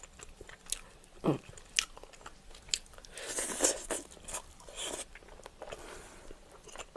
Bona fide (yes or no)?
yes